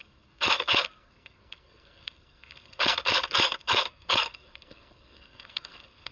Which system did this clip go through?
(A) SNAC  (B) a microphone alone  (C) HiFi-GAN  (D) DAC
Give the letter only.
A